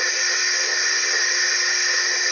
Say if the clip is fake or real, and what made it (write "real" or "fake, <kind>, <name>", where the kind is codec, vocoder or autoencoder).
real